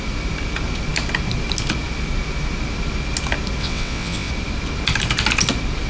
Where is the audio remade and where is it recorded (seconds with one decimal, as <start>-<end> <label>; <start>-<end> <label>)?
0.0-3.6 recorded; 3.6-4.3 remade; 4.3-5.9 recorded